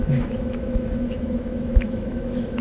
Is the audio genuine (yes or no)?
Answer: no